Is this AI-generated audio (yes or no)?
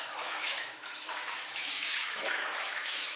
yes